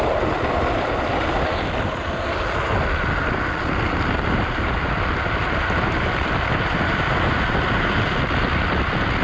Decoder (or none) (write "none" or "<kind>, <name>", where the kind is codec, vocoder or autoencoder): none